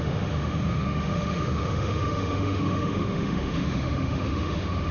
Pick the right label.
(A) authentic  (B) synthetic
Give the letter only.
B